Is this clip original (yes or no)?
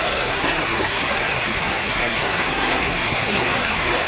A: no